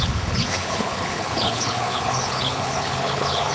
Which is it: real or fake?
fake